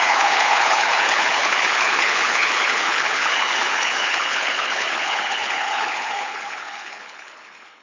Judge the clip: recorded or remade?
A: remade